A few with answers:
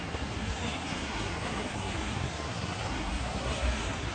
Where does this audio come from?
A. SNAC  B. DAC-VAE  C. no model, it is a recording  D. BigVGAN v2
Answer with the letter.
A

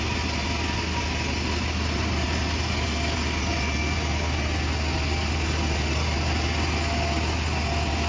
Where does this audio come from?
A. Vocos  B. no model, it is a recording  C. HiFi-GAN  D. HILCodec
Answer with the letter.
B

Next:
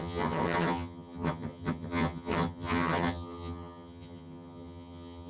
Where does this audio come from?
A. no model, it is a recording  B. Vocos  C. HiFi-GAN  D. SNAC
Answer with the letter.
C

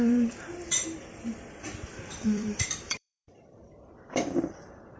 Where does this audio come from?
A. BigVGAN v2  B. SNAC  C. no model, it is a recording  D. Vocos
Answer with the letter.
A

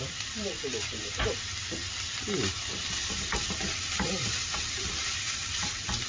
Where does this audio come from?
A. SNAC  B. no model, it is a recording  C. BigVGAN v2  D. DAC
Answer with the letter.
C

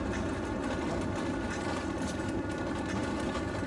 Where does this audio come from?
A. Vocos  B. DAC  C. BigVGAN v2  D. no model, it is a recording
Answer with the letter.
D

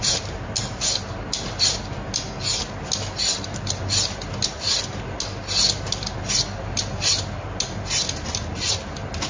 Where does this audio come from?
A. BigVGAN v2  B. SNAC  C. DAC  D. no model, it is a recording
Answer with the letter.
D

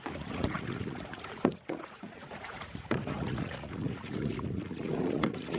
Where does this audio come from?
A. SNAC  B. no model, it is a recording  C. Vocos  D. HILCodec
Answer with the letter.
C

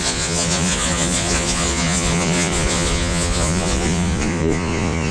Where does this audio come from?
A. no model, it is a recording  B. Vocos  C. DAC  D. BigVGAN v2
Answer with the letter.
B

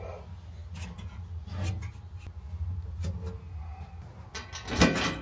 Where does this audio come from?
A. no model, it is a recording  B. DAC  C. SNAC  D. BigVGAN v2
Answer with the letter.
A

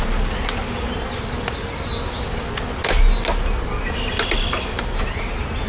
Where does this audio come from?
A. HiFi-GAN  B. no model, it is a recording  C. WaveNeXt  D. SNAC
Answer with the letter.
B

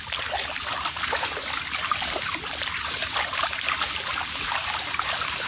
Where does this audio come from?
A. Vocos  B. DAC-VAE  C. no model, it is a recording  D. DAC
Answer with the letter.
C